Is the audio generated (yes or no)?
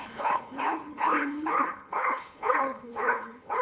yes